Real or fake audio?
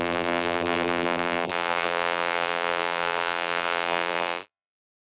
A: fake